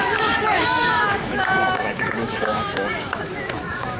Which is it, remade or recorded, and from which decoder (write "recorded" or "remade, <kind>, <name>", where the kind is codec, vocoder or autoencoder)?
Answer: remade, autoencoder, DAC-VAE